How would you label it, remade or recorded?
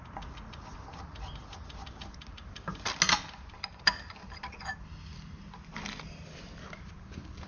recorded